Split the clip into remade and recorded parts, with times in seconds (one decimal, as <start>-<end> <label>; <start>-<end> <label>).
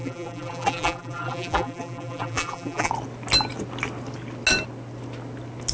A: 0.0-2.9 remade; 2.9-5.7 recorded